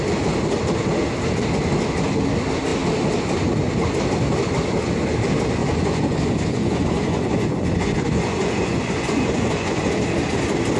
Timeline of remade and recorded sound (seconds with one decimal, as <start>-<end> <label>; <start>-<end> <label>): 0.0-5.6 recorded; 5.6-9.9 remade; 9.9-10.8 recorded